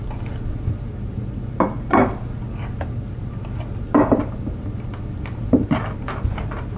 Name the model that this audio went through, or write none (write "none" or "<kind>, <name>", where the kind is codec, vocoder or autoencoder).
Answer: none